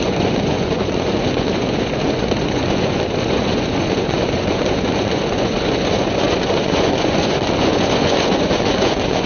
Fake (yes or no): yes